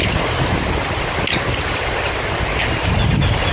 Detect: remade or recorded recorded